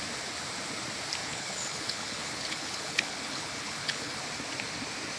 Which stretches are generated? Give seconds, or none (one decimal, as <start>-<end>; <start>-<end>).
1.2-4.2

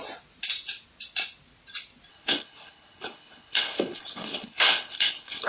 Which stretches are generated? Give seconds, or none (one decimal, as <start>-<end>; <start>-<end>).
2.1-5.5

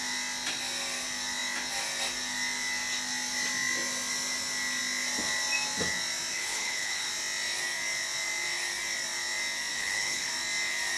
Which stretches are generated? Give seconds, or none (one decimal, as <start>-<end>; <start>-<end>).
6.3-7.1; 9.7-10.3

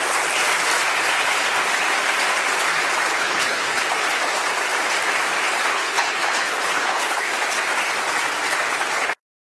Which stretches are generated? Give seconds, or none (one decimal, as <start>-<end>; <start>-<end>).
3.1-3.8; 5.7-7.3

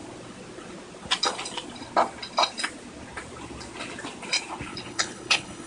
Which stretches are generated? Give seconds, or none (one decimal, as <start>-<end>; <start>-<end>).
4.7-5.7

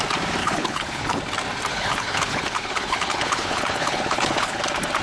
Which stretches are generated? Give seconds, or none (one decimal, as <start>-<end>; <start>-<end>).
0.4-1.2; 1.7-4.6

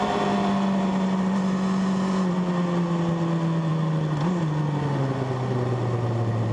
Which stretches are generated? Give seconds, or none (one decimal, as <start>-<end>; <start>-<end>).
none